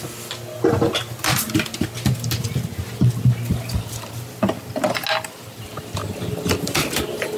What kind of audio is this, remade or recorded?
recorded